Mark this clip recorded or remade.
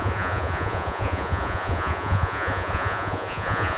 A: remade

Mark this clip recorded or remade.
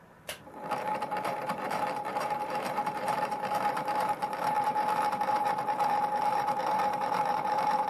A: remade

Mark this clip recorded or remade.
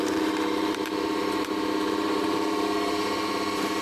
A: remade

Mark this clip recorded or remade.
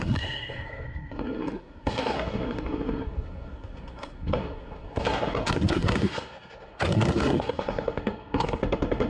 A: remade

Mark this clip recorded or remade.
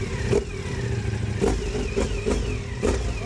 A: recorded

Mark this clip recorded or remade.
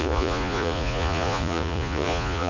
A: remade